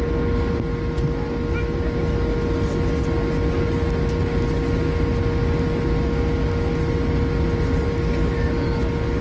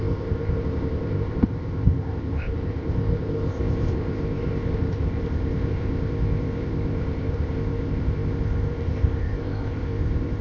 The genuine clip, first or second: first